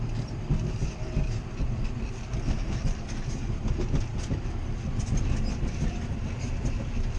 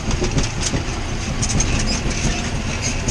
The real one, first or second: second